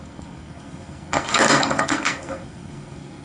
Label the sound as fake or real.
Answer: fake